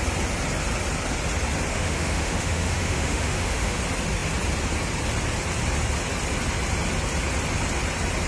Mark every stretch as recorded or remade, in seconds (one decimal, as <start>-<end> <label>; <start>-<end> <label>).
0.0-1.7 recorded; 1.7-3.8 remade; 3.8-8.3 recorded